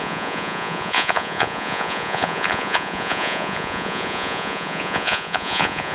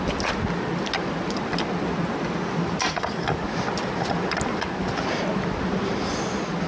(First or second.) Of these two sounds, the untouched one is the second